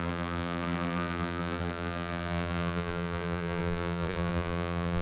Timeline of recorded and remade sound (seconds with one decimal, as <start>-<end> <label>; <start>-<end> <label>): 0.0-5.0 remade

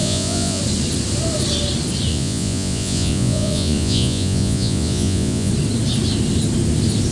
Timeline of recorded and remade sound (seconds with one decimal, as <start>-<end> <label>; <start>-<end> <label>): 0.0-0.6 remade; 0.6-2.1 recorded; 2.1-5.5 remade; 5.5-7.1 recorded

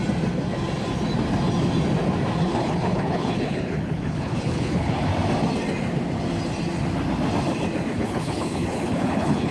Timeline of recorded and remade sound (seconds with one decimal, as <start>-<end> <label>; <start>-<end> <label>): 0.0-2.4 recorded; 2.4-5.1 remade; 5.1-7.9 recorded; 7.9-9.5 remade